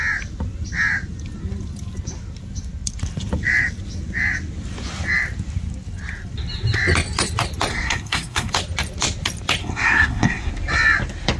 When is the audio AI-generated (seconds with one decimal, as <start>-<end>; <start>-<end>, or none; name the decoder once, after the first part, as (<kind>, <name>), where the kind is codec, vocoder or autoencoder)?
7.7-8.5 (codec, SNAC); 9.6-10.5